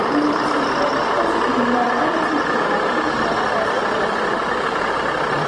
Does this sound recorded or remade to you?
recorded